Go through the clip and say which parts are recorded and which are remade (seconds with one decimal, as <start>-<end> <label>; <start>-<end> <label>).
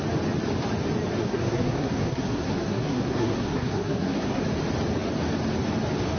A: 0.0-1.2 recorded; 1.2-4.4 remade; 4.4-6.2 recorded